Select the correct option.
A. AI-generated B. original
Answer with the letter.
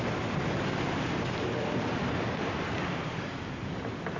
B